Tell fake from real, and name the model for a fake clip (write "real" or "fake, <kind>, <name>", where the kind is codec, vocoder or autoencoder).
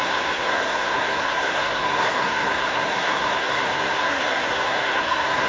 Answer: fake, codec, SNAC